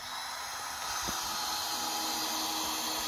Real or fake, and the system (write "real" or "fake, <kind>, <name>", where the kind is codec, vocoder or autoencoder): real